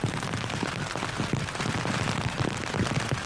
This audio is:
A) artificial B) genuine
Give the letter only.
B